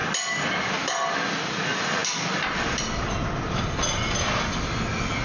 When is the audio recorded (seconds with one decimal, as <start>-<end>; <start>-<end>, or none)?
0.0-5.2